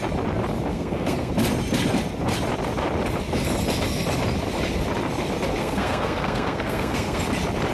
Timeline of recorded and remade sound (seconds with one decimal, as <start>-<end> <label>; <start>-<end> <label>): 0.0-0.7 recorded; 0.7-1.3 remade; 1.3-5.6 recorded; 5.6-7.2 remade; 7.2-7.7 recorded

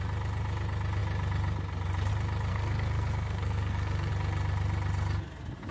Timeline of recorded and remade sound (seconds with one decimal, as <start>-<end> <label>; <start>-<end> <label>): 0.0-2.5 recorded; 2.5-4.1 remade; 4.1-5.7 recorded

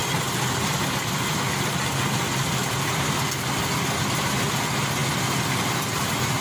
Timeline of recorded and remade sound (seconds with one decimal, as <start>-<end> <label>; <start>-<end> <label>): 0.0-6.4 recorded

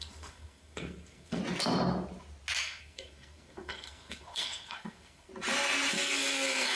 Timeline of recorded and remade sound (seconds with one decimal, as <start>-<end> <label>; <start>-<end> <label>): 0.0-1.4 remade; 1.4-2.6 recorded; 2.6-5.3 remade; 5.3-5.9 recorded; 5.9-6.8 remade

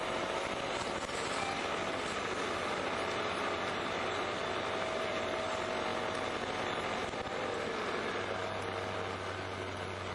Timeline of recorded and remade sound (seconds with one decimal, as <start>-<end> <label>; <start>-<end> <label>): 0.0-10.1 recorded